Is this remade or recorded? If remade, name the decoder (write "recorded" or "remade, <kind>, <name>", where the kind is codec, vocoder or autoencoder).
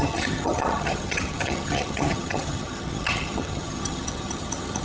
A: remade, vocoder, HiFi-GAN